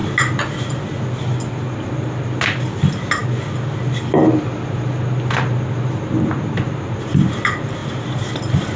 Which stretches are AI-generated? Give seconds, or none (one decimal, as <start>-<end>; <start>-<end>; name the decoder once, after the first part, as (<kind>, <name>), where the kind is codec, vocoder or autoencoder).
none

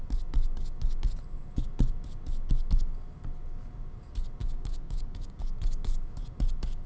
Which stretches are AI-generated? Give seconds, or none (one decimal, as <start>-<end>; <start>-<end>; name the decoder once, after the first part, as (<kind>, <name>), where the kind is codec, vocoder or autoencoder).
4.4-5.4 (codec, DAC)